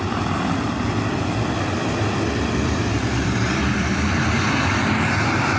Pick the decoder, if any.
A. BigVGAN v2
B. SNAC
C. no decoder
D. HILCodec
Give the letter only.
A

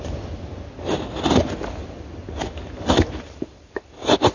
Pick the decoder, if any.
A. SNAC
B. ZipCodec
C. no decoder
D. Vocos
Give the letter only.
C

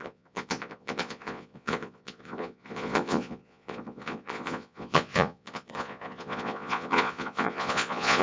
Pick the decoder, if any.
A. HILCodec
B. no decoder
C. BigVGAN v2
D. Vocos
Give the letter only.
D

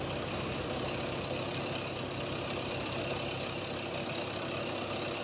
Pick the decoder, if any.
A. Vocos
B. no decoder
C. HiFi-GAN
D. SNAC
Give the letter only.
B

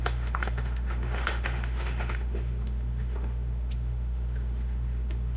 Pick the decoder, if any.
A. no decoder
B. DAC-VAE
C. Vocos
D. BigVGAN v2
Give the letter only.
B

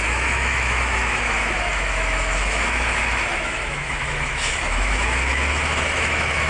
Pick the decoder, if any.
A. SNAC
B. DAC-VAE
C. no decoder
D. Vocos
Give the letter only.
B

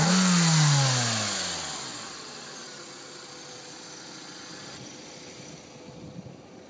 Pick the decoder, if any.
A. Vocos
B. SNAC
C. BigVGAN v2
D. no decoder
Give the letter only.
D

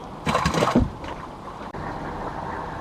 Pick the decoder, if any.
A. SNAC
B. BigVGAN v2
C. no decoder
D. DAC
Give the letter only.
C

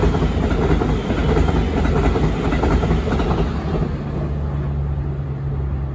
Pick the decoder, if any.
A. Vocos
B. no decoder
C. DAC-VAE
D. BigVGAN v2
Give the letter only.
B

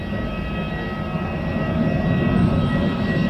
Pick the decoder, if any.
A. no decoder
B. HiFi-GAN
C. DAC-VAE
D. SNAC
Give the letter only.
A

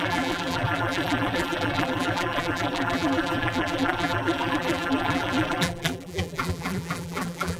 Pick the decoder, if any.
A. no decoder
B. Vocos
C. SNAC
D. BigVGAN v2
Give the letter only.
D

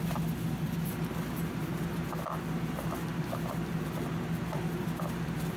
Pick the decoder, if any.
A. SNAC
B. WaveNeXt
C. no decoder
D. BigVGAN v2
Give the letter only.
C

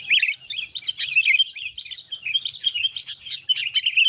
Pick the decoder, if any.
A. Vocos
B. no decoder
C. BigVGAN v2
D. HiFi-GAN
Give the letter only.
B